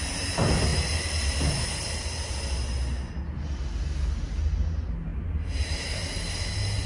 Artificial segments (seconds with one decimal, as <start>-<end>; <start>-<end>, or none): none